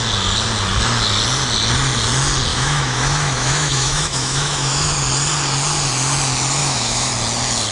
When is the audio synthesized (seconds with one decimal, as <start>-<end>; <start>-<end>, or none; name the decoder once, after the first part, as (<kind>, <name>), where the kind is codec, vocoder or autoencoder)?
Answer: 2.5-4.9 (autoencoder, DAC-VAE); 6.6-7.1